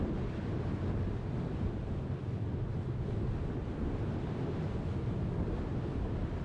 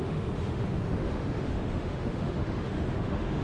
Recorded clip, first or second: first